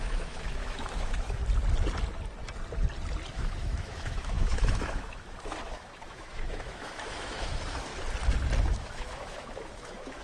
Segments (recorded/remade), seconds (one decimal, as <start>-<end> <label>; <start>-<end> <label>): 0.0-1.4 remade; 1.4-3.3 recorded; 3.3-7.9 remade; 7.9-8.6 recorded; 8.6-10.2 remade